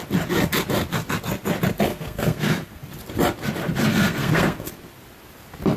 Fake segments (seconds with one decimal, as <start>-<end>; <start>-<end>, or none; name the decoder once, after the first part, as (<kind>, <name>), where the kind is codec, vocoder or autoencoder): 1.9-2.8 (codec, SNAC); 3.9-4.7